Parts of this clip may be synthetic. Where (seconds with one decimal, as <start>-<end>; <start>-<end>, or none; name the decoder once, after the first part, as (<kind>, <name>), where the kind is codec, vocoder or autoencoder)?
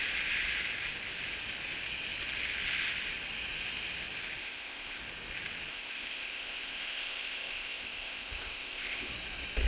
4.4-5.0 (codec, ZipCodec); 5.7-9.1